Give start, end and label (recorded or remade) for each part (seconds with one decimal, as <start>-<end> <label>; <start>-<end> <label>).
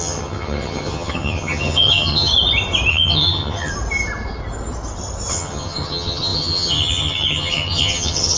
0.0-2.3 remade; 2.3-2.9 recorded; 2.9-3.7 remade; 3.7-5.3 recorded; 5.3-8.4 remade